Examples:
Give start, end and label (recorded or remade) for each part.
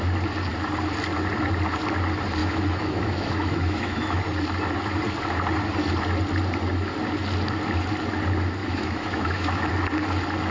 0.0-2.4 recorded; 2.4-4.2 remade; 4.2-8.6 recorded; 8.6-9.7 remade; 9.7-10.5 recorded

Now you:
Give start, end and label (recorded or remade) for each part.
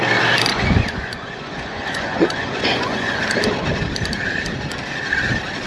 0.0-0.5 recorded; 0.5-3.2 remade; 3.2-5.7 recorded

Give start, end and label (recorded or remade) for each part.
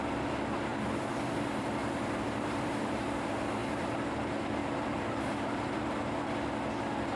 0.0-1.8 recorded; 1.8-3.0 remade; 3.0-3.6 recorded; 3.6-4.1 remade; 4.1-4.6 recorded; 4.6-6.0 remade; 6.0-7.2 recorded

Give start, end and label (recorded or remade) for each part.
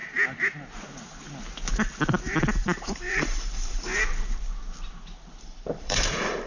0.0-2.5 recorded; 2.5-3.9 remade; 3.9-5.4 recorded; 5.4-6.5 remade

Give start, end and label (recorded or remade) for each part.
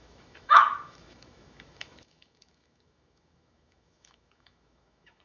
0.0-5.2 remade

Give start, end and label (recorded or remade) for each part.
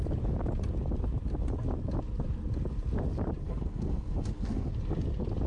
0.0-3.4 recorded; 3.4-4.7 remade; 4.7-5.5 recorded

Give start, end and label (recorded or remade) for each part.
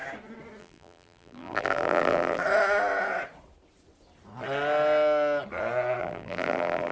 0.0-0.6 recorded; 0.6-2.4 remade; 2.4-6.0 recorded; 6.0-6.9 remade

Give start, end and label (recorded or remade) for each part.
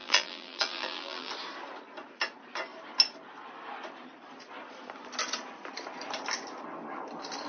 0.0-1.3 remade; 1.3-7.5 recorded